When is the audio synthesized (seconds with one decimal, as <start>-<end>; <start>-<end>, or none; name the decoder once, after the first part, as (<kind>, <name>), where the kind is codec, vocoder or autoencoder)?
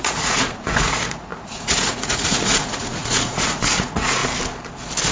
0.0-4.2 (vocoder, Vocos)